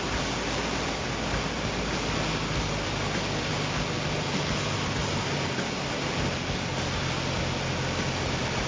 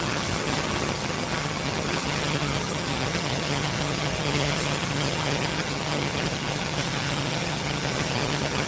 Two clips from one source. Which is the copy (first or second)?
second